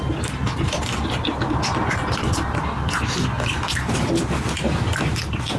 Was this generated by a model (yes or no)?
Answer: no